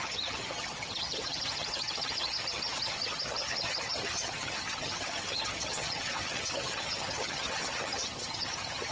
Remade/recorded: remade